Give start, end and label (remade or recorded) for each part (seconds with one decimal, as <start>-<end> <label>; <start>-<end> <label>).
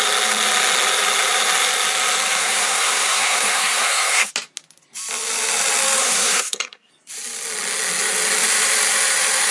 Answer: 0.0-2.4 recorded; 2.4-4.3 remade; 4.3-6.0 recorded; 6.0-6.9 remade; 6.9-9.5 recorded